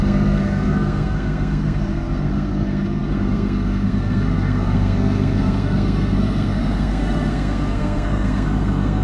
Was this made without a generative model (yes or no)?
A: no